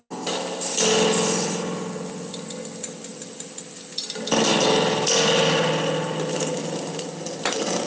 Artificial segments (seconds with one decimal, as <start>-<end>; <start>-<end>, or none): none